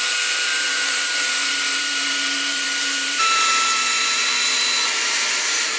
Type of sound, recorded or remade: remade